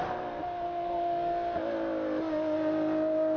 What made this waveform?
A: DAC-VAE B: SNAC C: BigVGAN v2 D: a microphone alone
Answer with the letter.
D